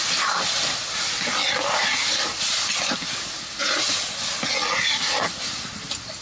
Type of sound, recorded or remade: recorded